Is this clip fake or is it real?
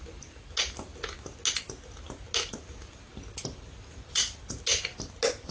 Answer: real